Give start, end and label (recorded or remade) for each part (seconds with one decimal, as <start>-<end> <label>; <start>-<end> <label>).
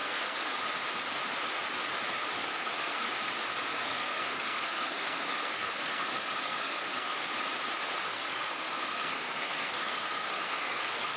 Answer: 0.0-0.5 remade; 0.5-2.4 recorded; 2.4-3.1 remade; 3.1-3.7 recorded; 3.7-7.3 remade; 7.3-8.1 recorded; 8.1-11.2 remade